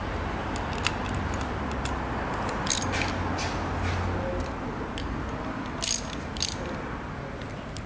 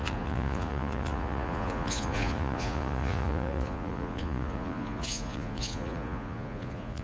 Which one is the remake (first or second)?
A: second